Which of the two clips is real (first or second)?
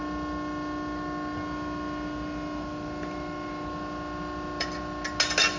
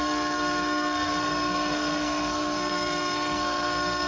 first